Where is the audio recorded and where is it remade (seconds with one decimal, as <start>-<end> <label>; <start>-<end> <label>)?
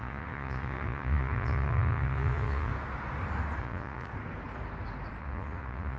0.0-2.7 remade; 2.7-3.6 recorded; 3.6-4.1 remade; 4.1-5.2 recorded; 5.2-6.0 remade